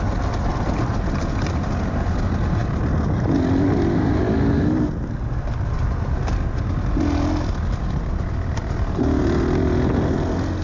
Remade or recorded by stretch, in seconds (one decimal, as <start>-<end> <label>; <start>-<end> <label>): 0.0-10.6 recorded